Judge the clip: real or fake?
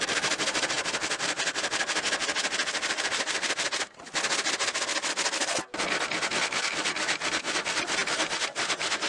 real